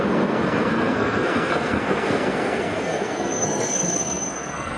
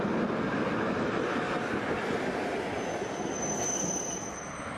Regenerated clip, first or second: first